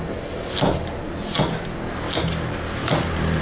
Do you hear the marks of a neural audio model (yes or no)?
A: no